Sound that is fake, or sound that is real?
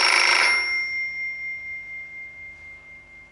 real